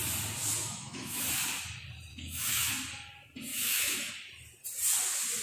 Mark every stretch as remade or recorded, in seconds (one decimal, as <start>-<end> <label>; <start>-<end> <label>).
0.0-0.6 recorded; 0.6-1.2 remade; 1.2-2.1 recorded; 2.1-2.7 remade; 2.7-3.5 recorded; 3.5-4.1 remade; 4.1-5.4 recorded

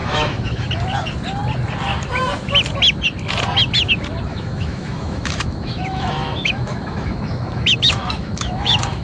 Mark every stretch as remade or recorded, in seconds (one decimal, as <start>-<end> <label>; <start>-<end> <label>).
0.0-0.7 remade; 0.7-4.3 recorded; 4.3-9.0 remade

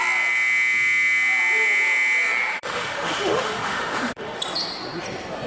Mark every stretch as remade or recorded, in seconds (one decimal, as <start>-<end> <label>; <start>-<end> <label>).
0.0-2.5 recorded; 2.5-4.4 remade; 4.4-5.5 recorded